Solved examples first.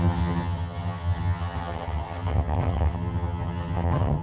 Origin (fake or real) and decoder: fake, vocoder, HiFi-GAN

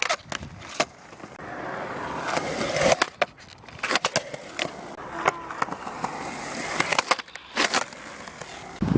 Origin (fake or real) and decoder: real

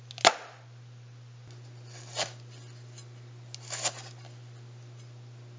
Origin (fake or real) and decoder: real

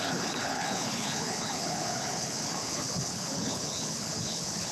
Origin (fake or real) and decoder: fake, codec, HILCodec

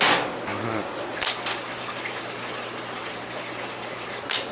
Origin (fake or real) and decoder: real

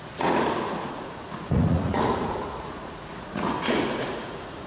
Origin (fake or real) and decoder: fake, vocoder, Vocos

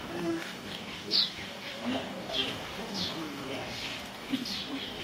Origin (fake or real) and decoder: fake, codec, DAC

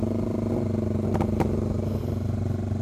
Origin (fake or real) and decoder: real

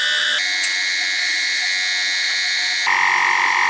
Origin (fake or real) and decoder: real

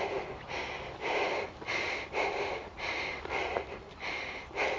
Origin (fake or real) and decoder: real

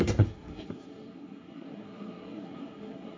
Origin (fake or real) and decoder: fake, codec, SNAC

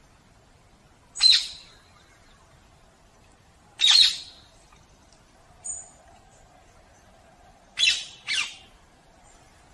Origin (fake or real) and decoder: real